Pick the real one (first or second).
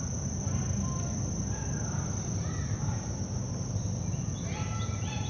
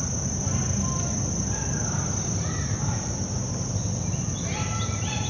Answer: first